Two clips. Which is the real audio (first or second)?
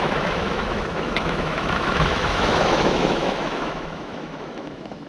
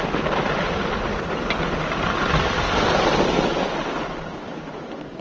second